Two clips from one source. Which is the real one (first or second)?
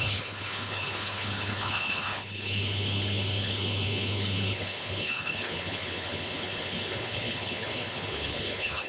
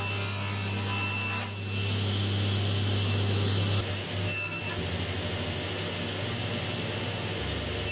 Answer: second